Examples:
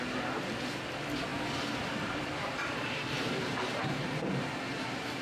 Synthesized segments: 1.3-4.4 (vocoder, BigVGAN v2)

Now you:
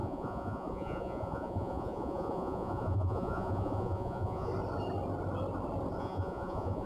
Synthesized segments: 0.0-4.5 (vocoder, Vocos); 6.0-6.9

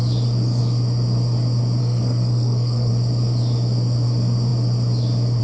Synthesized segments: 1.8-2.9 (codec, SNAC)

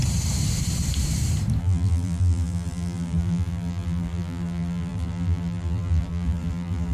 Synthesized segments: 1.6-6.9 (vocoder, BigVGAN v2)

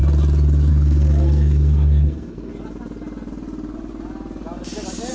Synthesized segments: 0.7-2.5 (codec, SNAC)

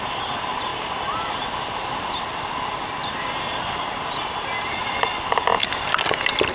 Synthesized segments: 0.7-2.2 (vocoder, BigVGAN v2); 3.0-4.3